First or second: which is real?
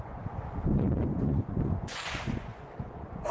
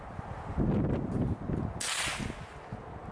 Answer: second